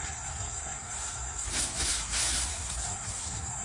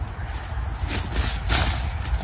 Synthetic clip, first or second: first